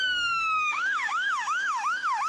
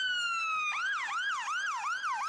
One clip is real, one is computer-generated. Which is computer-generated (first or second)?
first